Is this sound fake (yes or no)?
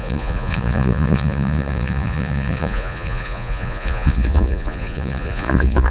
yes